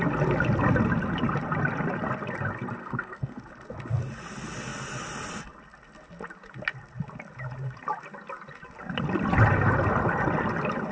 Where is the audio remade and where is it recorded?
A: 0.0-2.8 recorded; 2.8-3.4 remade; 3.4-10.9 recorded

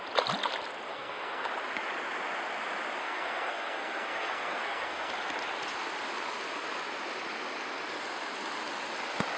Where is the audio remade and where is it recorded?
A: 0.0-0.9 recorded; 0.9-1.5 remade; 1.5-3.0 recorded; 3.0-5.1 remade; 5.1-9.4 recorded

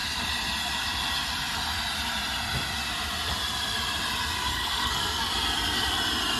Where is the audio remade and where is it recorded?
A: 0.0-4.5 recorded; 4.5-5.3 remade; 5.3-6.4 recorded

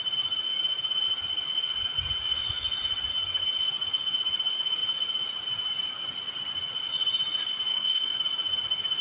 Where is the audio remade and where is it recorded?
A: 0.0-7.7 recorded; 7.7-8.2 remade; 8.2-9.0 recorded

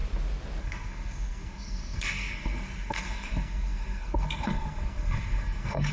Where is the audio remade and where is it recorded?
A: 0.0-0.6 recorded; 0.6-5.9 remade